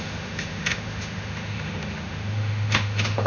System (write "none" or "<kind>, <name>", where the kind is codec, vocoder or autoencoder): autoencoder, DAC-VAE